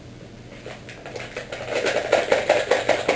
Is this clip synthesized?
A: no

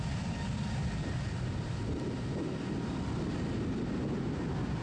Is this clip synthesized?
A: no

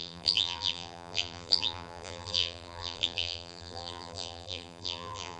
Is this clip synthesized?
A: yes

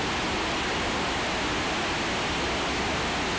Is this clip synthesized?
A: no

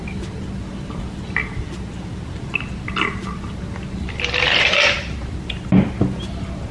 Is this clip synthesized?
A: no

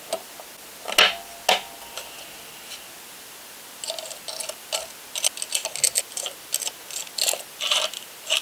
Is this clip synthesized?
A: no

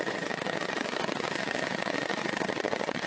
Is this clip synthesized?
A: yes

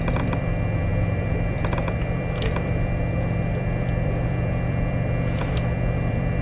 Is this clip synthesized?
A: yes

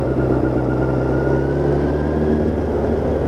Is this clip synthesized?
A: no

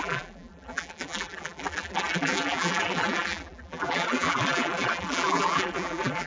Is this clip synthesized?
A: yes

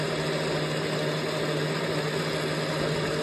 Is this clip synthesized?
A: no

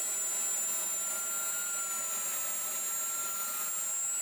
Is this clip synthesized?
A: no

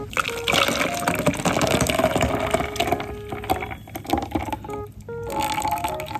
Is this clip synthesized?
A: no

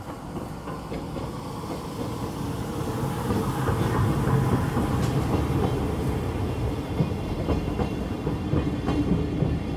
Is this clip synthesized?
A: no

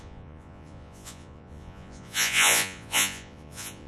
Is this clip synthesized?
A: yes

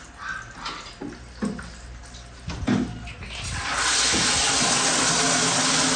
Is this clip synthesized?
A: no